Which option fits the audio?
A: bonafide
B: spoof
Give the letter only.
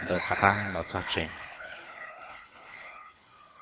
B